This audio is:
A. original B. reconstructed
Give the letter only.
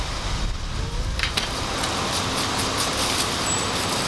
A